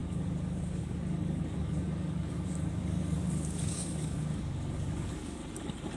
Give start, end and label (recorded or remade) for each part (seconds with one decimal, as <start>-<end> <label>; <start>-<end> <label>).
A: 0.0-5.4 remade; 5.4-6.0 recorded